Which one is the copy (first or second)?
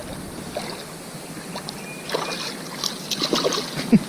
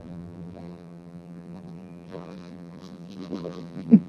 second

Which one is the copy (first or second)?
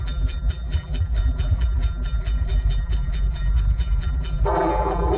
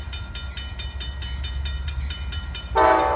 first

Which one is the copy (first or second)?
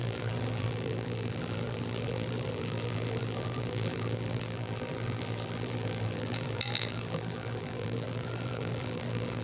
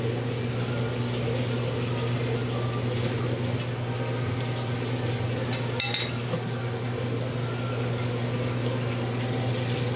first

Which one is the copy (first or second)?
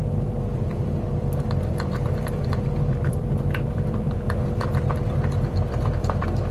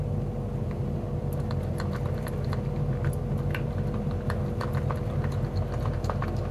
first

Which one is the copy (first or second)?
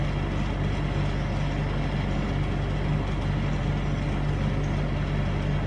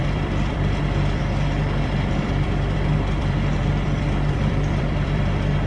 second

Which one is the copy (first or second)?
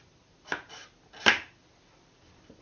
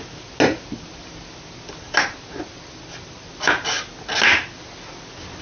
first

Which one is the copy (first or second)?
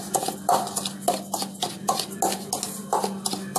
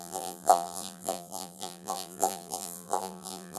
second